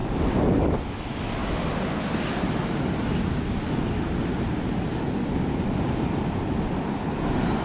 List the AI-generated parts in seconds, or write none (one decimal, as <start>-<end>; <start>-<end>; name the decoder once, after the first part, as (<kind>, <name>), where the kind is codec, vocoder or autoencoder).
0.0-0.6 (vocoder, BigVGAN v2)